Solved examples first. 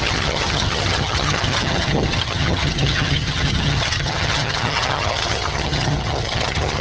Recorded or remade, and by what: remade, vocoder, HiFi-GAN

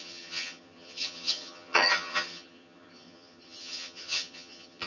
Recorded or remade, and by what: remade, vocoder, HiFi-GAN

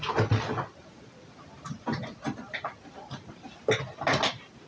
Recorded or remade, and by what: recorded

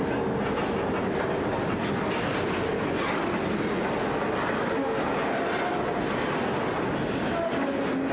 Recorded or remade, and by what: recorded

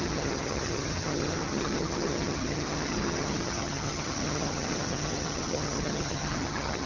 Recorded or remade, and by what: remade, vocoder, HiFi-GAN